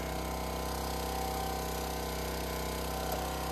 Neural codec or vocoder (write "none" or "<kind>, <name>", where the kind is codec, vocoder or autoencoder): none